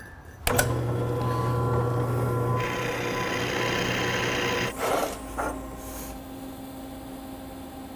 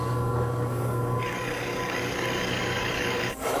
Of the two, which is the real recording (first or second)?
first